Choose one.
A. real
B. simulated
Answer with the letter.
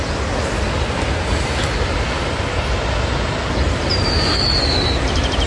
A